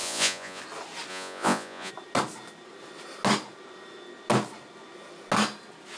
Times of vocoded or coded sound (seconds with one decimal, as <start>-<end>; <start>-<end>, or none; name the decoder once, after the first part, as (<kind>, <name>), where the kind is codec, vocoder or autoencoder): 0.0-0.6 (vocoder, Vocos); 1.1-1.9